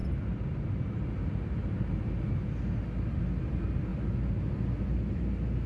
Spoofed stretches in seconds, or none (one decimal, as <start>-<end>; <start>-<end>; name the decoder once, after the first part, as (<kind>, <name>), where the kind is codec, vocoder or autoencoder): none